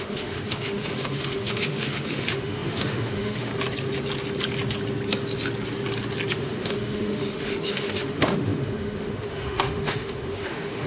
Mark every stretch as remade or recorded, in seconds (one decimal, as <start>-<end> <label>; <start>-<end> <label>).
0.0-3.5 remade; 3.5-6.3 recorded; 6.3-10.9 remade